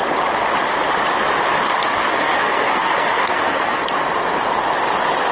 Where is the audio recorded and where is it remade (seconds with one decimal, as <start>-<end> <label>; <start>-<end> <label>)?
0.0-2.1 recorded; 2.1-3.8 remade; 3.8-5.3 recorded

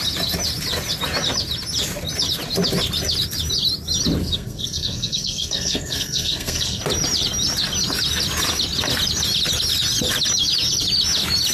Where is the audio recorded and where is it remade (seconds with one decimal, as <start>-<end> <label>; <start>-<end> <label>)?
0.0-4.2 recorded; 4.2-6.8 remade; 6.8-11.5 recorded

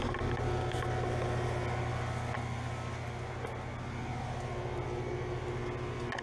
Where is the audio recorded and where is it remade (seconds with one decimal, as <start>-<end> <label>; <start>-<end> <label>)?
0.0-6.2 recorded

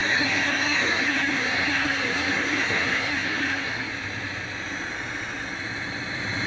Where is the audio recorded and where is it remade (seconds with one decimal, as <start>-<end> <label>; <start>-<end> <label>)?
0.0-3.9 remade; 3.9-6.5 recorded

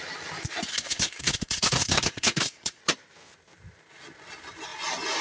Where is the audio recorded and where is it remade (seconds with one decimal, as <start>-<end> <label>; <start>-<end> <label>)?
0.0-0.7 recorded; 0.7-2.8 remade; 2.8-5.2 recorded